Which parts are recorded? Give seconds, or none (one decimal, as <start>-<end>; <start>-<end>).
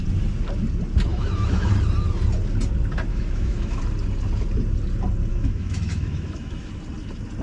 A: 0.0-1.1; 1.7-3.1; 3.8-5.3; 6.7-7.4